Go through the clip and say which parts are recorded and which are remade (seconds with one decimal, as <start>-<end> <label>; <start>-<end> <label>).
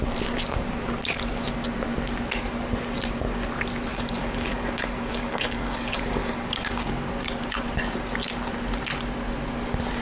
0.0-3.9 recorded; 3.9-6.9 remade; 6.9-10.0 recorded